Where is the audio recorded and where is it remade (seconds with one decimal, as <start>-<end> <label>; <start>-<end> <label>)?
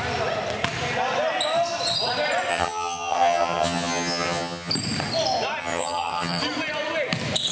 0.0-2.5 recorded; 2.5-4.7 remade; 4.7-5.6 recorded; 5.6-6.4 remade; 6.4-7.5 recorded